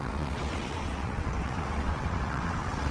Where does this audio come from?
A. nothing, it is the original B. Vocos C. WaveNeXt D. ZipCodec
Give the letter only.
C